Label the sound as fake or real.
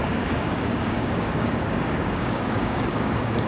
fake